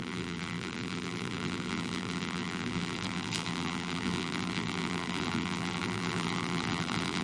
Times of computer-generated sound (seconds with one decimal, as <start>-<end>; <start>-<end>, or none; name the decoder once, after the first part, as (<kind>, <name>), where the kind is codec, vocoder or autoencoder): 0.0-7.2 (vocoder, BigVGAN v2)